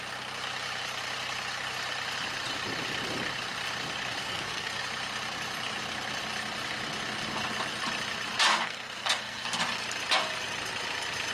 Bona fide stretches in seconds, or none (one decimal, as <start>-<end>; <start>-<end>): 0.0-4.2; 4.8-8.5; 9.6-11.3